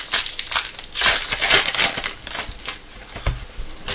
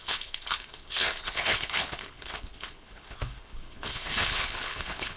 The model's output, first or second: second